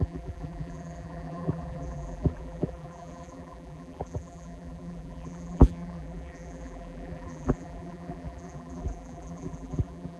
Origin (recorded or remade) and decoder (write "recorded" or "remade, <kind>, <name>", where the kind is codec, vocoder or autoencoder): remade, vocoder, BigVGAN v2